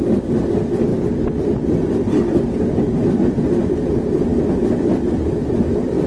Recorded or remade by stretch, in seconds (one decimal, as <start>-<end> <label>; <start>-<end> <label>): 0.0-6.1 recorded